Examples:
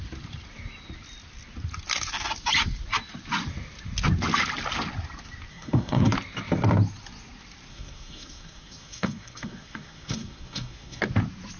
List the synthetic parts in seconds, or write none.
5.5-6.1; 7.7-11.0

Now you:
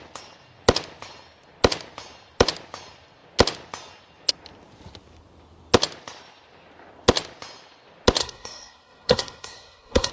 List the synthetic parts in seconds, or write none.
8.2-10.1

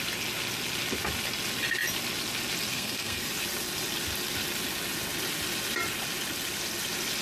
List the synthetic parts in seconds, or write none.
2.7-3.3

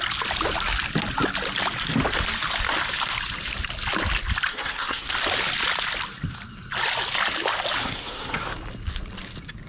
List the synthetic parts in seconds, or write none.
4.5-5.1; 7.8-8.4

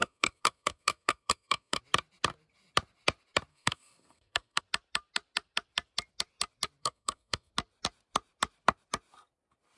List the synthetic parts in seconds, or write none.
0.0-1.8; 3.5-4.6; 6.8-7.5

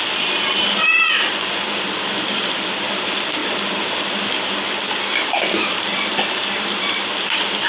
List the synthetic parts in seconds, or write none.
none

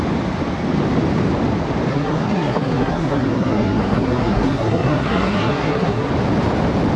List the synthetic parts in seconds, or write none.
1.9-6.1